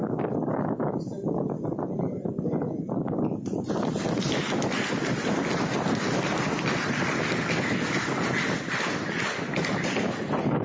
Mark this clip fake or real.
real